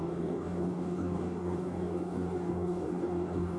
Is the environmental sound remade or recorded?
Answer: remade